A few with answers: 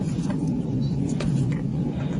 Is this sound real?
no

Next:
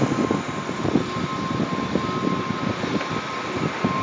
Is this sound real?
yes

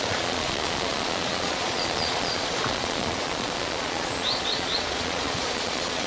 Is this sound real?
no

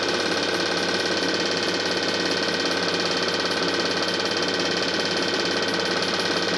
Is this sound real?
yes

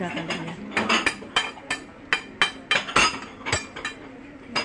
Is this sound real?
yes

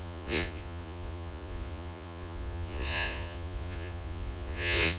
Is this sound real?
no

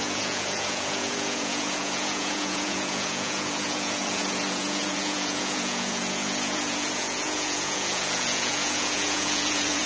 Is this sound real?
no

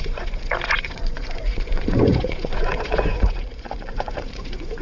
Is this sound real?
no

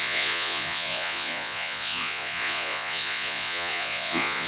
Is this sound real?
no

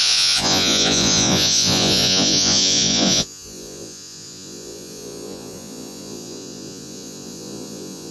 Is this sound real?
no